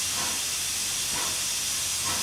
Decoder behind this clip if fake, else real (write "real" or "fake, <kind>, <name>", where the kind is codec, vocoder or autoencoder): real